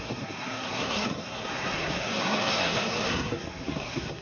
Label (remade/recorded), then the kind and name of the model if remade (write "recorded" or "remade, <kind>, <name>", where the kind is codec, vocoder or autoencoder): remade, codec, SNAC